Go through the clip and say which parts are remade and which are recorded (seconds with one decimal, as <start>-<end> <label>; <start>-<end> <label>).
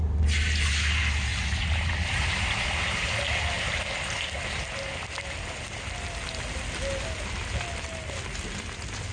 0.0-9.1 recorded